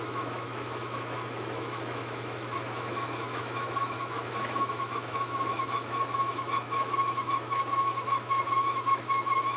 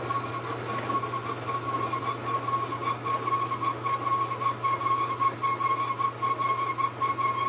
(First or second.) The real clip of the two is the second